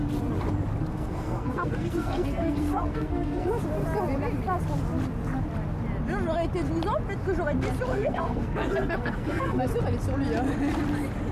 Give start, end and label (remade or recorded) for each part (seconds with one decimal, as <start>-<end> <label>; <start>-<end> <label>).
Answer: 0.0-0.9 recorded; 0.9-3.6 remade; 3.6-7.9 recorded; 7.9-9.7 remade; 9.7-11.3 recorded